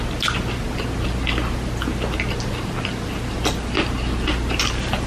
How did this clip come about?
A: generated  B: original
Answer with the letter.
B